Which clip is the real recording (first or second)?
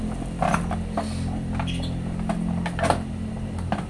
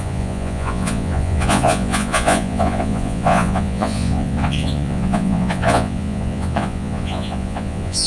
first